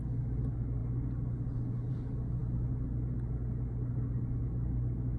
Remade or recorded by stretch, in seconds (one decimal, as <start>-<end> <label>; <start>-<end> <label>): 0.0-5.2 recorded